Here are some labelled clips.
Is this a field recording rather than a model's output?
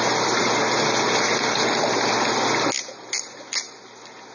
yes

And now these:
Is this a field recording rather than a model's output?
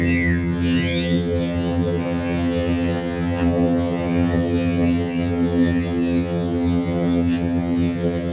no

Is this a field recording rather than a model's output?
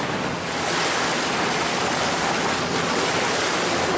yes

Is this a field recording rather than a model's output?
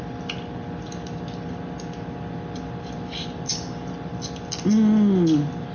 yes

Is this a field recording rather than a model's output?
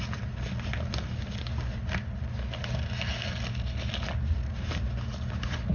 yes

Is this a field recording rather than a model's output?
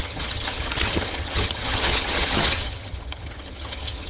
no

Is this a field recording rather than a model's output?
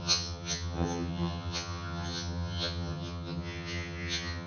no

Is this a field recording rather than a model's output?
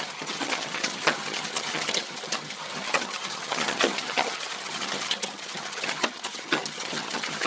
no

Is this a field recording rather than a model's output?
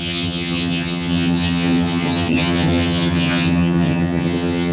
no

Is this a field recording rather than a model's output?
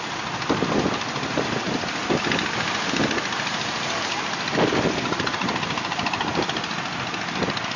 yes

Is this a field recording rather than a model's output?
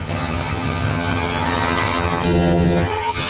no